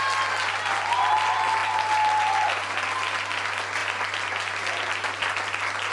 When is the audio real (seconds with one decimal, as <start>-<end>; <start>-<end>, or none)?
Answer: 0.0-5.9